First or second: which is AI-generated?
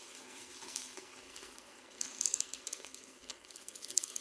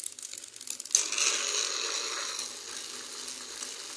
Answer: first